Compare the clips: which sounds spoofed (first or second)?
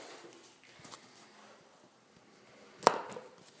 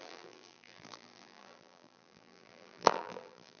second